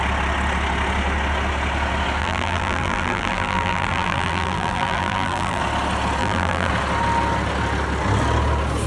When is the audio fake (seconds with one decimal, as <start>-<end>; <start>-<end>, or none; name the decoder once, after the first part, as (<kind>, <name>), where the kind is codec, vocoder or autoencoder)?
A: 2.2-5.6 (vocoder, BigVGAN v2); 6.2-6.7